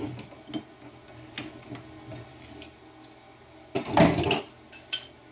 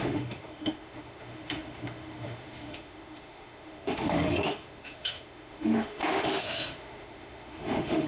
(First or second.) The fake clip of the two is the second